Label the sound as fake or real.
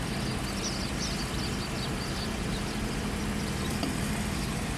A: real